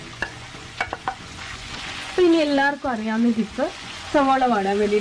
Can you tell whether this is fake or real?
fake